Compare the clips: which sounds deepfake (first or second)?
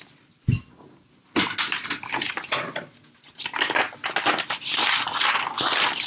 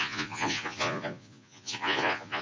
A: second